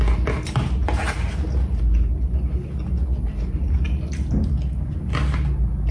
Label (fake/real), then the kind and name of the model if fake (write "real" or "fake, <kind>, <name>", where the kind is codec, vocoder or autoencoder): real